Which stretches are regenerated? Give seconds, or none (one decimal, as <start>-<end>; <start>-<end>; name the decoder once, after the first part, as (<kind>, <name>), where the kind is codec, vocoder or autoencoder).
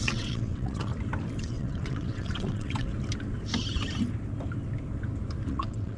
0.0-0.9 (vocoder, WaveNeXt); 1.4-2.9; 5.5-6.0